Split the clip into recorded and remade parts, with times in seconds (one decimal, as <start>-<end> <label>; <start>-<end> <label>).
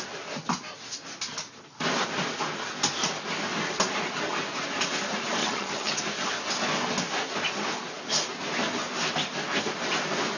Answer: 0.0-5.4 recorded; 5.4-6.0 remade; 6.0-10.4 recorded